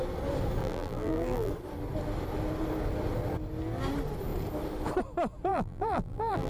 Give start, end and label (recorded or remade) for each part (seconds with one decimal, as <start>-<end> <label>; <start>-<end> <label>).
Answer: 0.0-0.6 recorded; 0.6-1.5 remade; 1.5-5.5 recorded; 5.5-6.5 remade